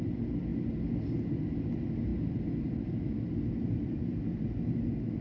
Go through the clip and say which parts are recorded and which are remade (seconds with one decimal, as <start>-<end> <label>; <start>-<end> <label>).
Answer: 0.0-5.2 recorded